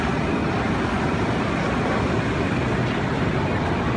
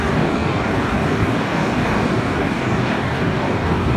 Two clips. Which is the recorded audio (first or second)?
first